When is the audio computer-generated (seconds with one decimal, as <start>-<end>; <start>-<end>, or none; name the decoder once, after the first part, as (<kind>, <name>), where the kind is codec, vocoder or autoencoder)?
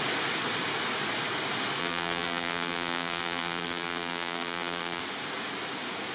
1.8-5.0 (vocoder, BigVGAN v2)